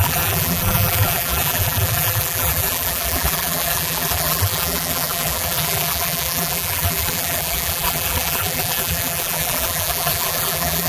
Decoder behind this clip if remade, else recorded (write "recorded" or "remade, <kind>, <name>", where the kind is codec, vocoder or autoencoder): remade, vocoder, BigVGAN v2